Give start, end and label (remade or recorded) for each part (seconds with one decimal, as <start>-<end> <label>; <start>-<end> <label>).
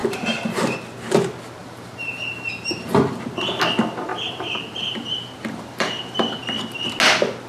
0.0-0.6 remade; 0.6-1.6 recorded; 1.6-3.2 remade; 3.2-4.1 recorded; 4.1-6.4 remade; 6.4-7.5 recorded